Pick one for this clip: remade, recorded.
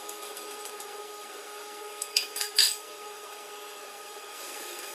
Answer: remade